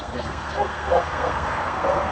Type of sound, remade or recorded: remade